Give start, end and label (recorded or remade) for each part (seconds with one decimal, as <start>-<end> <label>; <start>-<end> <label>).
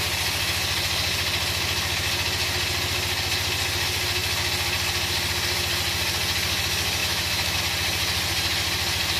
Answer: 0.0-7.0 recorded; 7.0-7.6 remade; 7.6-9.2 recorded